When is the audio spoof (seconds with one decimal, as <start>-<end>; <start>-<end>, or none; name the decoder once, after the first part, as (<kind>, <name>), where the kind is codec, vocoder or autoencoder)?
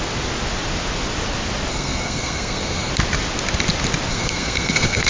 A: 1.7-2.9 (codec, SNAC); 4.1-5.1